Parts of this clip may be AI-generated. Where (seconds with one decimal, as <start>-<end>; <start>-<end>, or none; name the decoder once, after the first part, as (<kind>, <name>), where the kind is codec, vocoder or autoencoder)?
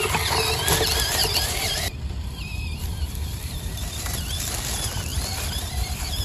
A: 1.2-4.4 (vocoder, BigVGAN v2); 5.1-6.2